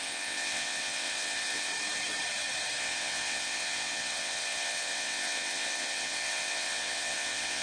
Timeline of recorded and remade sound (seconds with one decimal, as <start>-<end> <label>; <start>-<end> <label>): 0.0-1.7 remade; 1.7-2.8 recorded; 2.8-7.6 remade